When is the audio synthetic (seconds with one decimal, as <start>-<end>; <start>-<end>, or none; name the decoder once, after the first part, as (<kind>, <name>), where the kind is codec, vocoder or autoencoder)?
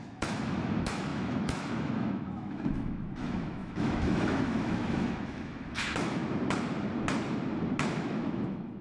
0.0-6.2 (autoencoder, DAC-VAE); 7.9-8.8